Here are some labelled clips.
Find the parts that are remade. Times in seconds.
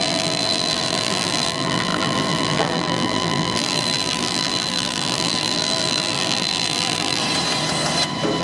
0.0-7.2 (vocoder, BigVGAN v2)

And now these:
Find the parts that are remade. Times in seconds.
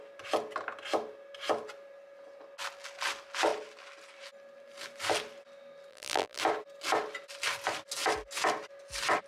5.9-6.4 (vocoder, BigVGAN v2)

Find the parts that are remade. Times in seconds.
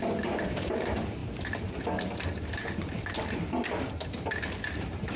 0.0-5.2 (vocoder, BigVGAN v2)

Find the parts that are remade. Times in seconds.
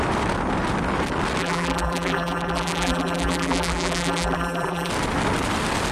1.4-4.9 (vocoder, BigVGAN v2)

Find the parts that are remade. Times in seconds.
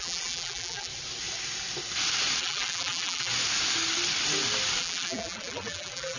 0.0-0.9 (vocoder, BigVGAN v2); 2.4-3.3; 4.8-6.2